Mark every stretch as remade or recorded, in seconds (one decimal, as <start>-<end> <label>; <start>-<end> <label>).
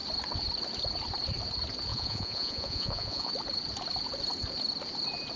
0.0-1.9 recorded; 1.9-3.3 remade; 3.3-5.4 recorded